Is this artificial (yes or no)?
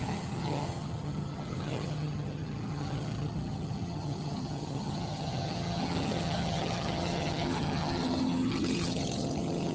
yes